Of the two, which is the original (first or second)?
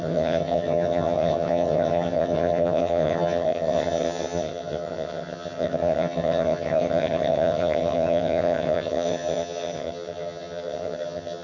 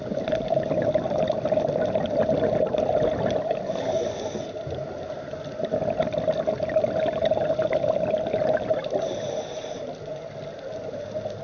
second